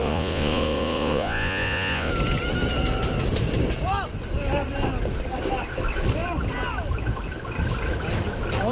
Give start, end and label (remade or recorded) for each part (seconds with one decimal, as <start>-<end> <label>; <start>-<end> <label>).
0.0-2.1 remade; 2.1-8.7 recorded